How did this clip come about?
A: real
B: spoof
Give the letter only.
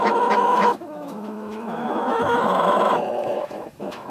B